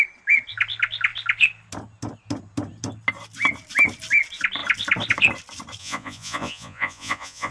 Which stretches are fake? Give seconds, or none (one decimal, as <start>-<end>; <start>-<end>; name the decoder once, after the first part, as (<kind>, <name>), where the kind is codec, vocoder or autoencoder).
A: 5.8-7.5 (vocoder, Vocos)